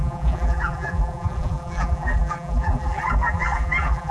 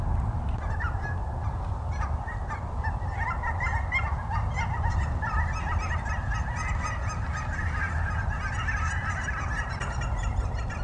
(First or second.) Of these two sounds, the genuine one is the second